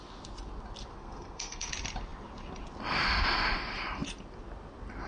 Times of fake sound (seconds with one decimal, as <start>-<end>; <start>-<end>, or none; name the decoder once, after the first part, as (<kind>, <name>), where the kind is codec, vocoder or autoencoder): 0.9-1.7 (codec, SNAC)